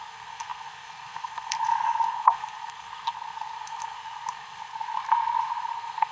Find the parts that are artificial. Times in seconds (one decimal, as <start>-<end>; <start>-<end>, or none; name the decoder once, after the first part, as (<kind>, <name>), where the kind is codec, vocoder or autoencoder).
0.0-6.1 (codec, SNAC)